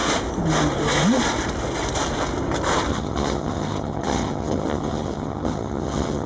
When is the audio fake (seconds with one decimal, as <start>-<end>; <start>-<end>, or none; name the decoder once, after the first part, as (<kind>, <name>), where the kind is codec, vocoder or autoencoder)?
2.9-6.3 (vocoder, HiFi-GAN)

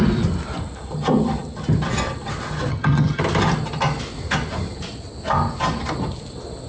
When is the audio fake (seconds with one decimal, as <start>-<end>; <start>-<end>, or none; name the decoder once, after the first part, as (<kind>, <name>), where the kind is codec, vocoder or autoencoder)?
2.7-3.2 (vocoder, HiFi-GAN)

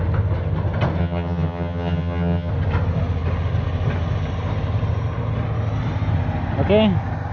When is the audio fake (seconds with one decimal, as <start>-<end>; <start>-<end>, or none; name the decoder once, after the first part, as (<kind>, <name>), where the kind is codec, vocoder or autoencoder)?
1.0-2.5 (vocoder, HiFi-GAN)